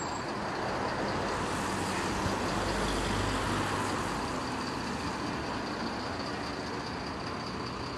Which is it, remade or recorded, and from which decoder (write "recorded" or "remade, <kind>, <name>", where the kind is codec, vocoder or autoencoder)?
recorded